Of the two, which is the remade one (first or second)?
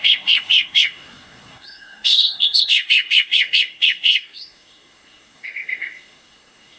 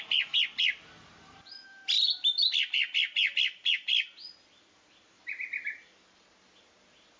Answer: first